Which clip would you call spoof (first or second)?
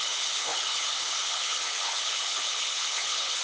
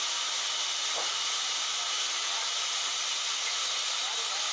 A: first